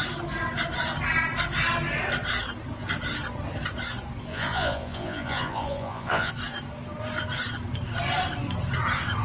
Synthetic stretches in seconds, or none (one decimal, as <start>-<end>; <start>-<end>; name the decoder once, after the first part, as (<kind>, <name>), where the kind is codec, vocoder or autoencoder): 4.3-6.3 (vocoder, Vocos)